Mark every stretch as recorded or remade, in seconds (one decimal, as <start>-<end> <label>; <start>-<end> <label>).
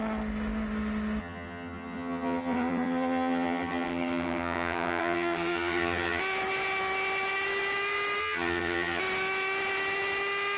0.0-1.2 recorded; 1.2-6.2 remade; 6.2-8.2 recorded; 8.2-9.0 remade; 9.0-10.6 recorded